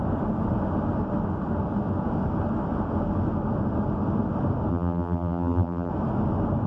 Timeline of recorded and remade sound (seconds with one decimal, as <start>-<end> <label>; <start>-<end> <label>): 0.0-4.7 recorded; 4.7-5.9 remade; 5.9-6.7 recorded